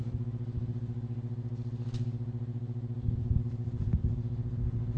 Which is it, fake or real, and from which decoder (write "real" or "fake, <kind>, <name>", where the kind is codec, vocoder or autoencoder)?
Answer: real